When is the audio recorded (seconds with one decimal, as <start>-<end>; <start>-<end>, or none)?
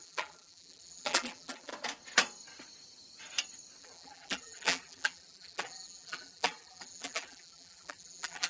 1.7-3.8